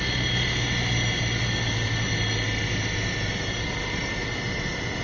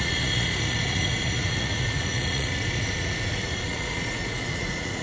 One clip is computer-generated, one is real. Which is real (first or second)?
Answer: first